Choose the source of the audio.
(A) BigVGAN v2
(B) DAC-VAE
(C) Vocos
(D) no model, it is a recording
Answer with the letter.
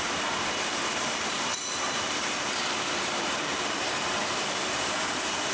A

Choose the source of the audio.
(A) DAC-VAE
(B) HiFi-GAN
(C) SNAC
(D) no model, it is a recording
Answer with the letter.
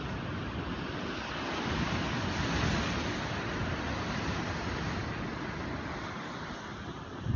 D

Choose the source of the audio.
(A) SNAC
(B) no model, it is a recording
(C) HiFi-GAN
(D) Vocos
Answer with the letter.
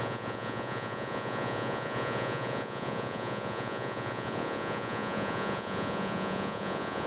D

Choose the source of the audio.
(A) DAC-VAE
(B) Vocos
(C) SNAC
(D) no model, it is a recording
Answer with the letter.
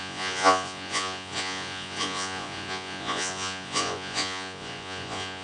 B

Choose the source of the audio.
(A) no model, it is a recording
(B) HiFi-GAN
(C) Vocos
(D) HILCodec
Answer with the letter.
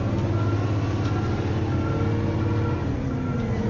A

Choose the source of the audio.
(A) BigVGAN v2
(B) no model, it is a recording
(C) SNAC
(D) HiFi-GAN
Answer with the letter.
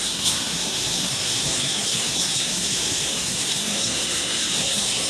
C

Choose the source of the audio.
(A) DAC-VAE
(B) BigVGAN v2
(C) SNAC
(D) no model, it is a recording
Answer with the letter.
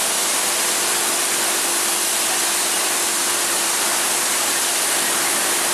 B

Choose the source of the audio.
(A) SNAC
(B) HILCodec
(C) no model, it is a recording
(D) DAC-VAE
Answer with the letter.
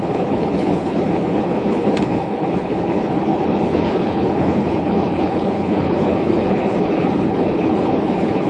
B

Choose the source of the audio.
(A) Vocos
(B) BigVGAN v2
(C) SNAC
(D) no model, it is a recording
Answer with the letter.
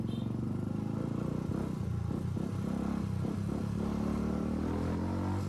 D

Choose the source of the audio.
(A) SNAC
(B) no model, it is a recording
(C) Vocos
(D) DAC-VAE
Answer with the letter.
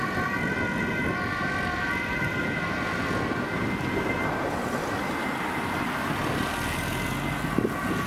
B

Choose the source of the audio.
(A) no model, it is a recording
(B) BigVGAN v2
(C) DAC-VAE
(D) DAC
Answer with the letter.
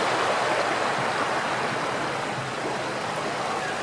A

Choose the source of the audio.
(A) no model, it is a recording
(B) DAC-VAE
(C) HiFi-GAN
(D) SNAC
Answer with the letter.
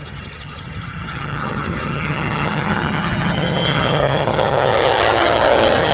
C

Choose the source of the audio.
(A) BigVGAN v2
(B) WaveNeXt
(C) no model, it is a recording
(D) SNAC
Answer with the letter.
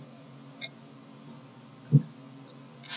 C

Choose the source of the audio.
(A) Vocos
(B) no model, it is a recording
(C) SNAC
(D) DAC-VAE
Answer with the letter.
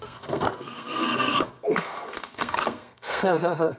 C